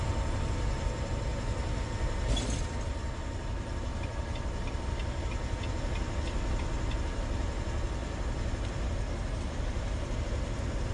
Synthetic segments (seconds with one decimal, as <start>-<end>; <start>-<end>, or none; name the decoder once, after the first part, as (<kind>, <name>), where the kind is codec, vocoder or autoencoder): none